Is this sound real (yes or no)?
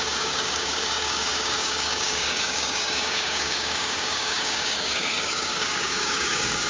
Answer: no